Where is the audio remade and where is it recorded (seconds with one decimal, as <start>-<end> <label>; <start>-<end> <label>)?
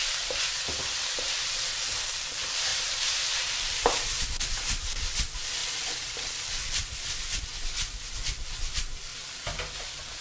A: 0.0-5.6 recorded; 5.6-7.4 remade; 7.4-9.1 recorded; 9.1-9.7 remade; 9.7-10.2 recorded